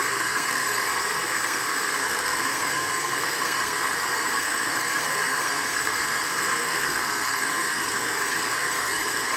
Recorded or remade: remade